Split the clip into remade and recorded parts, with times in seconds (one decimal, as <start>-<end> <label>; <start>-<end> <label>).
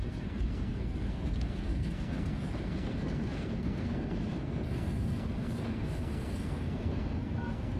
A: 0.0-7.8 remade